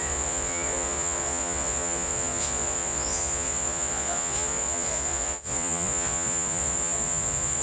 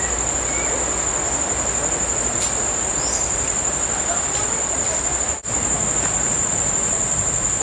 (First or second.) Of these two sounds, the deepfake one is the first